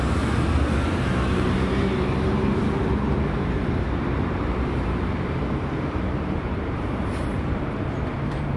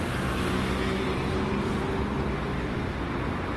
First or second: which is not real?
first